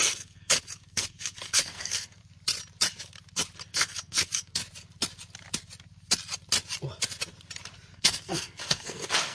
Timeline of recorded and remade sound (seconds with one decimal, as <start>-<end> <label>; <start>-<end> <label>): 0.0-2.2 remade; 2.2-3.7 recorded; 3.7-4.6 remade; 4.6-7.9 recorded; 7.9-9.3 remade